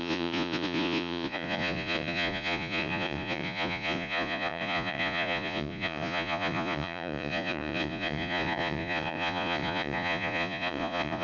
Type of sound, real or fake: fake